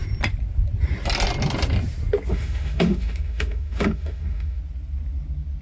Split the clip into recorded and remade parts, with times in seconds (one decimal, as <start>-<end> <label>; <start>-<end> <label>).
0.0-2.3 recorded; 2.3-4.6 remade; 4.6-5.6 recorded